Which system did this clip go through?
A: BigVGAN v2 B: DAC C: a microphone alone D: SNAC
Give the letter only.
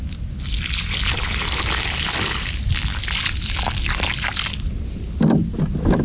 C